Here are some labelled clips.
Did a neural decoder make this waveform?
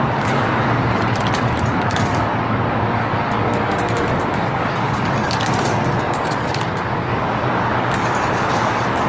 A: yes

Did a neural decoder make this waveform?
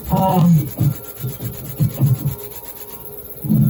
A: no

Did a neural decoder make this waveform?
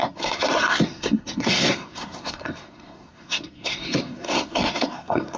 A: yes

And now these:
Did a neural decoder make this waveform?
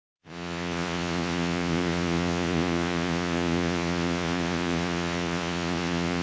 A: yes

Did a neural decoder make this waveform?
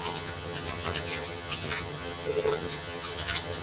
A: yes